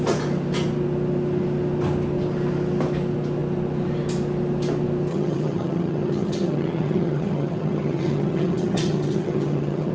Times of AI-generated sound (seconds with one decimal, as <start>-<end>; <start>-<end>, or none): 5.1-9.9